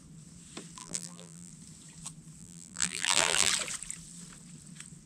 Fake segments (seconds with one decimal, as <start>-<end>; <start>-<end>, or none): 0.8-1.5; 2.4-3.5